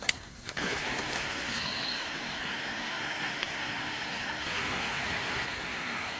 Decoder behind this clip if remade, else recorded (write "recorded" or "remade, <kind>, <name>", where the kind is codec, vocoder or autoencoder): remade, codec, SNAC